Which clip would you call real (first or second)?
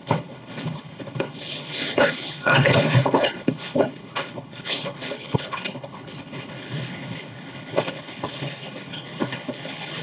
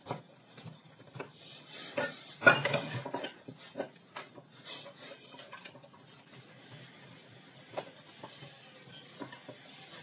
second